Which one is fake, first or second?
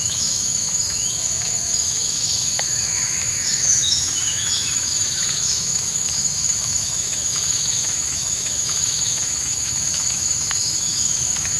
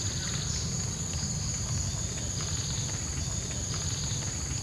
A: first